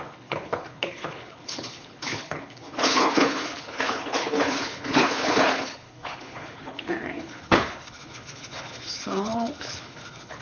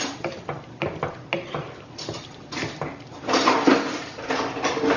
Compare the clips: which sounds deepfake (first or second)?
first